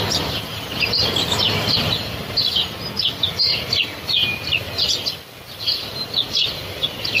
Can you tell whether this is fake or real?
real